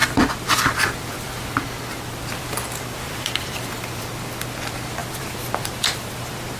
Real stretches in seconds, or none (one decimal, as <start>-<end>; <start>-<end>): 4.0-5.0